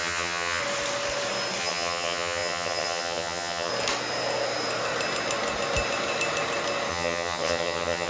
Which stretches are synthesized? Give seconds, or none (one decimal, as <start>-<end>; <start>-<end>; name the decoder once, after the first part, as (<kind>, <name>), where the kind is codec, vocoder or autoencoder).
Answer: 0.0-0.6 (vocoder, HiFi-GAN); 1.6-3.7; 6.9-8.1